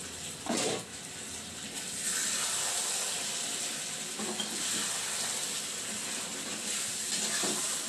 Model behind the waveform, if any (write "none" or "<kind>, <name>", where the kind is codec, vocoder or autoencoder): none